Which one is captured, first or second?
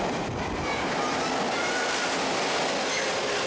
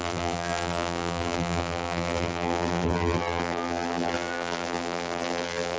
first